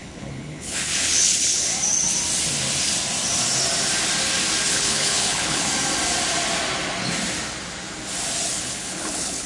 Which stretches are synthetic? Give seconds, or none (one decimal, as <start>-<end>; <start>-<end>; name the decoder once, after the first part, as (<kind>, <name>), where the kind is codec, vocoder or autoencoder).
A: 0.0-1.7 (codec, HILCodec); 4.7-5.7; 8.5-9.5